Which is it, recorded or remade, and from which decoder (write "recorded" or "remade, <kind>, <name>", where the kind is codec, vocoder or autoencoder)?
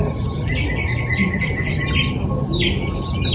recorded